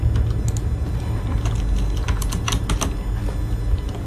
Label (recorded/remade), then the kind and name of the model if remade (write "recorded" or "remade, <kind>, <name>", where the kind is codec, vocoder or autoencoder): recorded